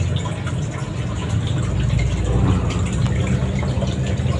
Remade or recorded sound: recorded